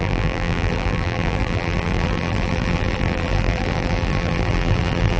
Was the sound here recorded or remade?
remade